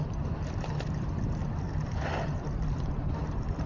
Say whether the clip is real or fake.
real